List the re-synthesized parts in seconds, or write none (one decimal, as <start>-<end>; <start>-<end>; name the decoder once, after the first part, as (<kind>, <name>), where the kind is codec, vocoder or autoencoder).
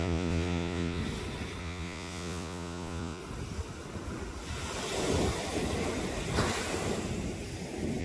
0.0-1.0 (vocoder, Vocos); 1.6-3.2